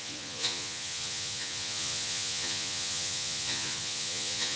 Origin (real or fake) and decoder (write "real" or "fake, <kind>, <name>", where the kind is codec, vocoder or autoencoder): fake, vocoder, Vocos